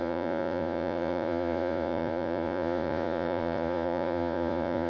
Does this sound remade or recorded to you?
remade